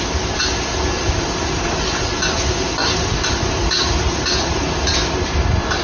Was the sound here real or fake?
real